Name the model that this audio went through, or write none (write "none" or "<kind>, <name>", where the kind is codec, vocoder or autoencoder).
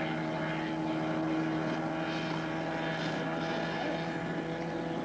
none